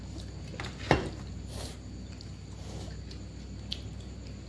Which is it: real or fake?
real